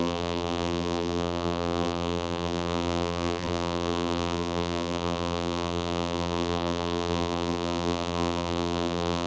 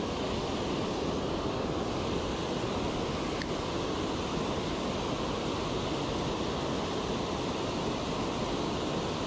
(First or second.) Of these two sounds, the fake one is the first